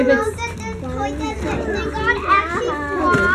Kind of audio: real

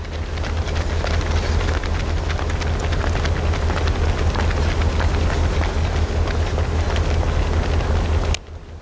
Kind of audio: real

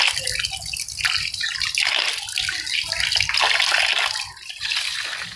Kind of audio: real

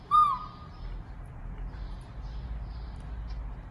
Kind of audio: fake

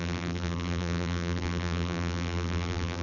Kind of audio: fake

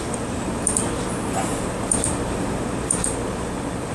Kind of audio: fake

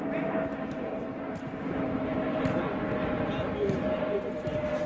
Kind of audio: real